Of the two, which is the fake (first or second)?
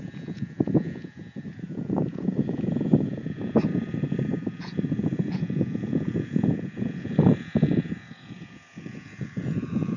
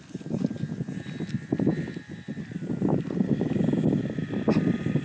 first